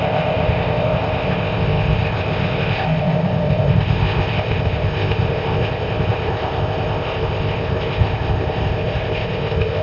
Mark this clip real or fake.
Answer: fake